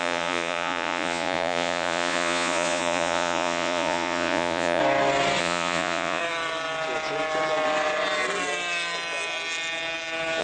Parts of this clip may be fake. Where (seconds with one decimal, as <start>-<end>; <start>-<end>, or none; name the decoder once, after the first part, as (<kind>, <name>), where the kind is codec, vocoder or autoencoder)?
0.0-4.8 (vocoder, Vocos); 5.4-6.2